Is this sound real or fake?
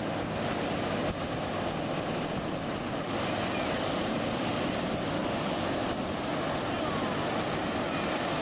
real